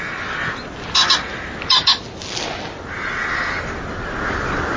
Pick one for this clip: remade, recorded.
recorded